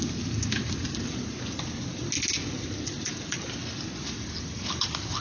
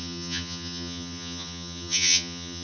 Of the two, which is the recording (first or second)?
first